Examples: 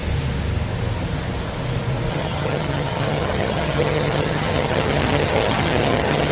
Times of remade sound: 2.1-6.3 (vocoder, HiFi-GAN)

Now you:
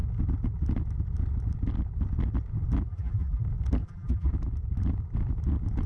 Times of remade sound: 2.9-3.4 (vocoder, BigVGAN v2); 3.8-4.3

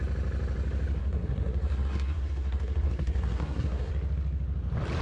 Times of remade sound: 1.0-3.9 (codec, SNAC)

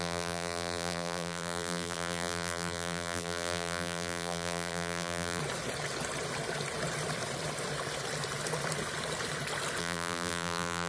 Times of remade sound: 0.0-5.4 (vocoder, BigVGAN v2); 9.8-10.9